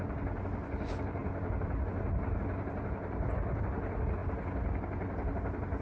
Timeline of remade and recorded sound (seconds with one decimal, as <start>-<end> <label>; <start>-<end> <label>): 0.0-5.8 recorded